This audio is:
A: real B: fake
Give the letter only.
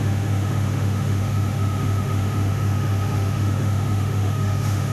B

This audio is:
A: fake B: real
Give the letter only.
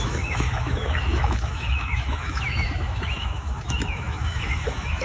A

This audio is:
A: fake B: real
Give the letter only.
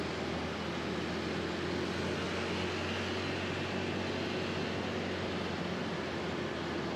B